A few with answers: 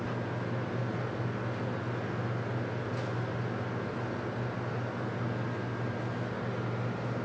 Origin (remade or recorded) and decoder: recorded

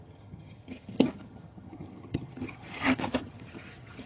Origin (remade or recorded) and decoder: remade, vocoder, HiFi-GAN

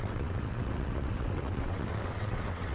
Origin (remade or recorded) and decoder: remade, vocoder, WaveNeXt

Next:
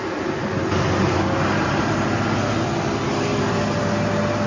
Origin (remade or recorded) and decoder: recorded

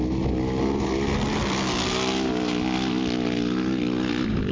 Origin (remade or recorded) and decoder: recorded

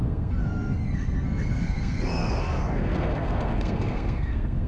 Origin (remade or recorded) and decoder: remade, codec, SNAC